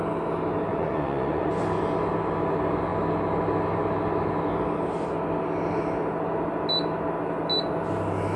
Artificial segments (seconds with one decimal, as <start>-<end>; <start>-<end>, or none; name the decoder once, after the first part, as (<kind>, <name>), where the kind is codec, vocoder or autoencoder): 0.7-1.5 (vocoder, Vocos)